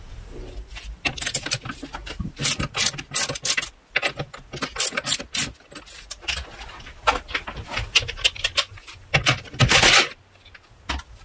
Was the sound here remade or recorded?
recorded